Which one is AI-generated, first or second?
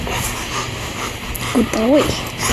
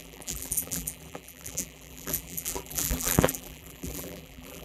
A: second